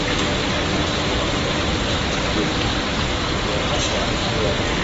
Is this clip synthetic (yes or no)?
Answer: no